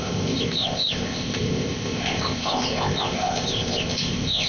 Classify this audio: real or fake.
fake